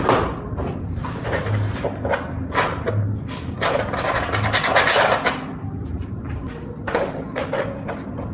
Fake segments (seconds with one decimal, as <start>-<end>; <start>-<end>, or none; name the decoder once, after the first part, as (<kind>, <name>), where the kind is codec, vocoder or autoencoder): 5.9-6.5 (vocoder, BigVGAN v2)